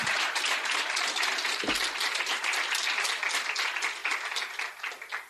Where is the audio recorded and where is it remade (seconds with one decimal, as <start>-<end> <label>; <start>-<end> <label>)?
0.0-3.2 remade; 3.2-5.3 recorded